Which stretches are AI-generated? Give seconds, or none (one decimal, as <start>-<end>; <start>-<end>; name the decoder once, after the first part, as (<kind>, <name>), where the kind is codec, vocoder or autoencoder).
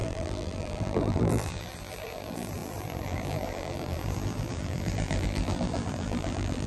0.0-6.7 (vocoder, BigVGAN v2)